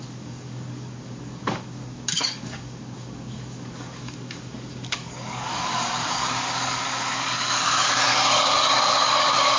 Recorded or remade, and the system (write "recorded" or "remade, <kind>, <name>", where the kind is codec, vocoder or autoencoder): remade, codec, DAC